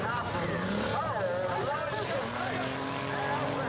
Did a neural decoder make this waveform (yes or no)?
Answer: no